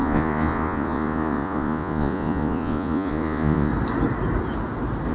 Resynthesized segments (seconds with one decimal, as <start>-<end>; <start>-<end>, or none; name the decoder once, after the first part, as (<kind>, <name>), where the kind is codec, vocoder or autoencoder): 0.0-3.7 (vocoder, Vocos)